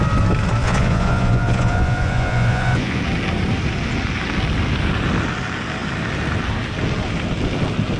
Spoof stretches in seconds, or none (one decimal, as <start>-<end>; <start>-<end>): 0.6-3.0